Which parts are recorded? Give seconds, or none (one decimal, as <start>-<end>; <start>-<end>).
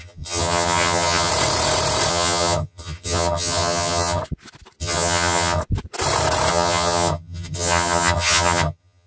1.3-2.1; 4.2-4.8; 5.6-6.5